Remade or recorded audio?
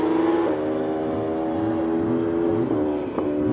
recorded